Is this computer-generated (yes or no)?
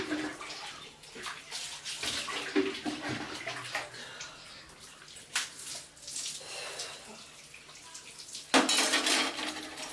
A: no